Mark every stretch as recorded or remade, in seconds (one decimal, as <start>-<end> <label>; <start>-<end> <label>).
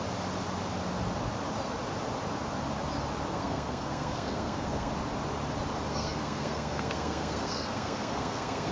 0.0-3.3 recorded; 3.3-4.9 remade; 4.9-5.9 recorded; 5.9-8.7 remade